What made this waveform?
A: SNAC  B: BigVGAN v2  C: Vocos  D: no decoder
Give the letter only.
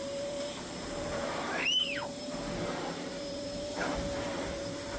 B